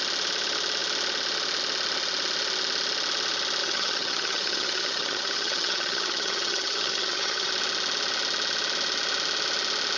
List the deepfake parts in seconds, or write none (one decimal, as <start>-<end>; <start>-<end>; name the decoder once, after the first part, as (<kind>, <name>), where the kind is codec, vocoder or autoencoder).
3.6-7.5 (vocoder, HiFi-GAN)